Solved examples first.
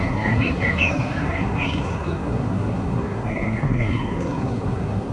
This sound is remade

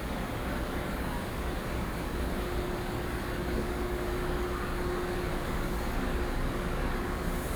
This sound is remade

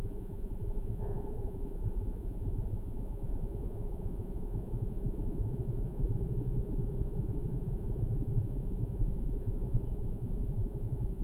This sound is remade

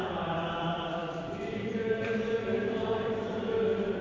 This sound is remade